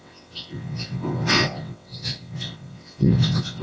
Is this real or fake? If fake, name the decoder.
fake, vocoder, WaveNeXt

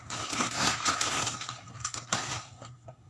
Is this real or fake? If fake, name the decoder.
fake, codec, SNAC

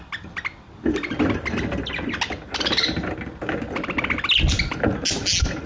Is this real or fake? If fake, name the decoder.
real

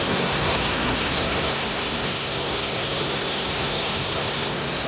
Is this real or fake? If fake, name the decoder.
fake, codec, SNAC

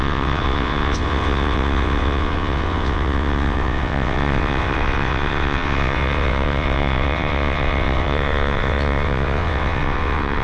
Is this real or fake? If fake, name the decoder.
fake, vocoder, WaveNeXt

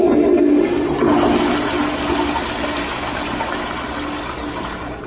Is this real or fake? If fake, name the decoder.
real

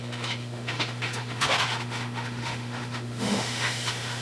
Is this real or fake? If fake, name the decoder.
fake, autoencoder, DAC-VAE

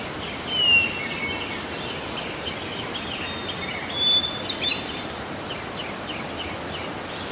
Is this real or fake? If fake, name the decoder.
real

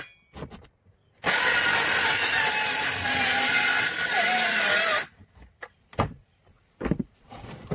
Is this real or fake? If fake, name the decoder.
real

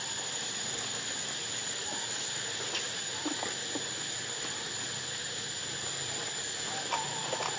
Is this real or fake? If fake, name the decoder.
real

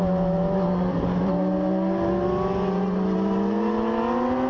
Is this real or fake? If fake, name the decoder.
real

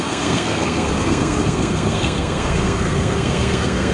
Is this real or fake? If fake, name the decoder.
fake, codec, SNAC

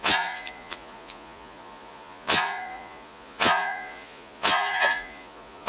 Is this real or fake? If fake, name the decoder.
fake, vocoder, Vocos